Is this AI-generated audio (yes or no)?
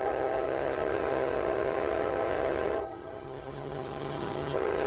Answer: yes